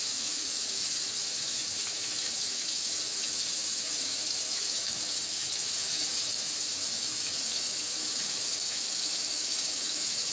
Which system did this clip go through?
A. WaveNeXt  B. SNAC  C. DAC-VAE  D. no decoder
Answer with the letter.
C